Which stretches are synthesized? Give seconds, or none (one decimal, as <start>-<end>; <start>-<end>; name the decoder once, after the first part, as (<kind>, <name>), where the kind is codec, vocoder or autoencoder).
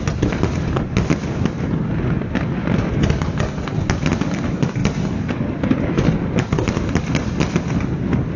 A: none